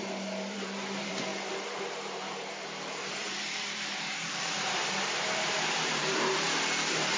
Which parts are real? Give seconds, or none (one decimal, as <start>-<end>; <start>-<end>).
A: none

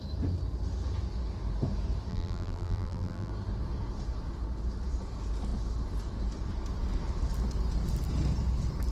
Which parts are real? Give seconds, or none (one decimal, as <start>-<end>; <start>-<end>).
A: 0.0-2.1; 3.3-8.9

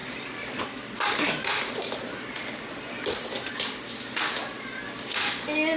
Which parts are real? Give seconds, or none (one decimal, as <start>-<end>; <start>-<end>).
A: 3.5-5.8